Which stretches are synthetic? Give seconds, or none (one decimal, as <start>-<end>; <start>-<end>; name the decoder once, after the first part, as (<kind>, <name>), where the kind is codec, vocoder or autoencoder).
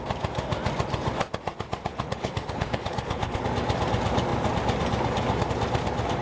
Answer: 1.9-3.4 (codec, HILCodec)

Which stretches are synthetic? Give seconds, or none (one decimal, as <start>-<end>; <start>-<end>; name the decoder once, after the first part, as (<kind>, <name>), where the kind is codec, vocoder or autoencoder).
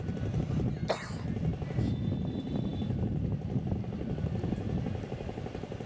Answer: none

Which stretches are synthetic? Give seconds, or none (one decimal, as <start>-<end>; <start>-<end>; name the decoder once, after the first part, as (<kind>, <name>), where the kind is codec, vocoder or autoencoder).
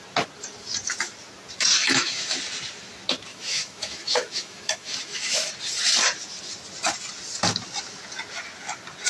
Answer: 1.8-2.4 (autoencoder, DAC-VAE); 3.3-5.5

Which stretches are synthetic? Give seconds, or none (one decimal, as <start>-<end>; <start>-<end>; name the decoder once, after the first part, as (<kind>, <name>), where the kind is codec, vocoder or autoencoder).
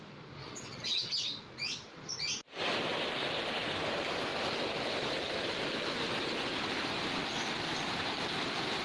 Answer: 0.4-1.1 (vocoder, WaveNeXt)